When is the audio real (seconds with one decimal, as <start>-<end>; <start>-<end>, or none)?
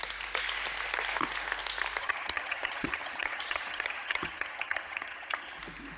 0.0-2.0; 5.6-6.0